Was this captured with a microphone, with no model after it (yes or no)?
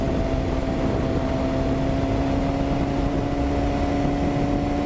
yes